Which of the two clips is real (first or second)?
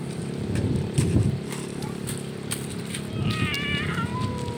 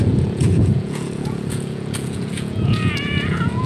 first